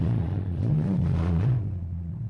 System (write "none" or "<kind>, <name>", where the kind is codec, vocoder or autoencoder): vocoder, Vocos